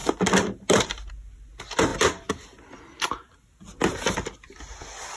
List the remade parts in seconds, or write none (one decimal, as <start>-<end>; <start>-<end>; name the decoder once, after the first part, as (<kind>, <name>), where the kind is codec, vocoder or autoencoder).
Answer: none